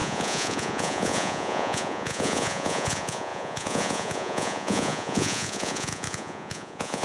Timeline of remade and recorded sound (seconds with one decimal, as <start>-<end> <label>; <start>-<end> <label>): 0.0-7.0 remade